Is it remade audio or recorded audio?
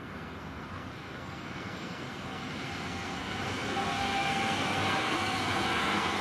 remade